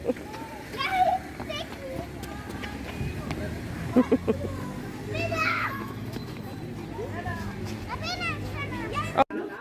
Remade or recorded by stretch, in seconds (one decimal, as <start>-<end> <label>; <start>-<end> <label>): 0.0-5.4 recorded; 5.4-6.4 remade; 6.4-9.6 recorded